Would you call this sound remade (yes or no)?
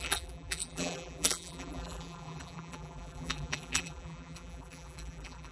yes